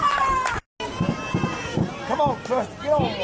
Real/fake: real